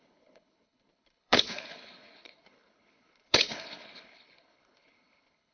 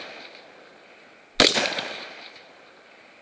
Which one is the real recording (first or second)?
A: second